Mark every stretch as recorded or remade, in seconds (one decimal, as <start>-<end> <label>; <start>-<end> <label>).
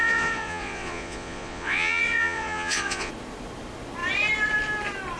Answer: 0.0-3.1 remade; 3.1-5.2 recorded